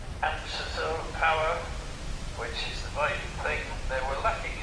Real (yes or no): yes